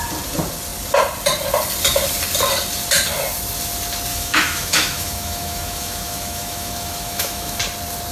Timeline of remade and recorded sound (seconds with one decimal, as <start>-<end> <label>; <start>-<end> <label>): 0.0-4.1 recorded; 4.1-7.6 remade; 7.6-8.1 recorded